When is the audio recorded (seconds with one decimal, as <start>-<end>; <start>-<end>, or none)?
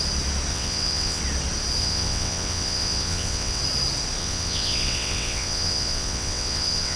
0.0-0.5; 1.2-1.8; 3.6-4.2